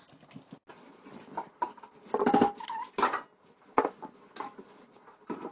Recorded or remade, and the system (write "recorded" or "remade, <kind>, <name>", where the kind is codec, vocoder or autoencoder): recorded